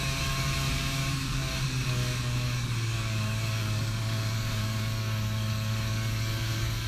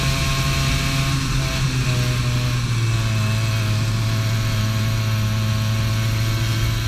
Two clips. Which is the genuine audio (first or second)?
second